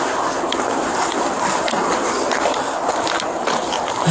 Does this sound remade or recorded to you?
recorded